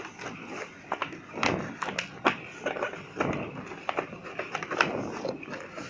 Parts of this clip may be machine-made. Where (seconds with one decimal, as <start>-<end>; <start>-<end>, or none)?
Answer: none